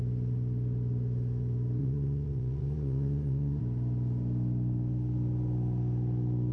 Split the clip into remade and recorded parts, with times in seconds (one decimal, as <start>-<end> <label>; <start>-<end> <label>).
0.0-1.8 recorded; 1.8-3.6 remade; 3.6-6.5 recorded